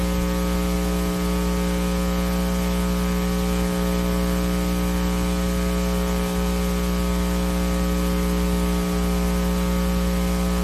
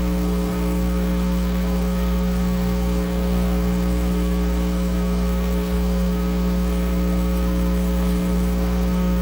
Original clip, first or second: first